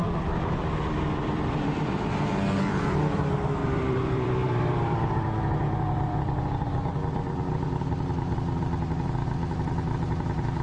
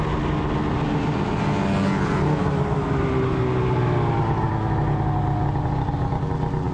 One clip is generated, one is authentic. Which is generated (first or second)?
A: first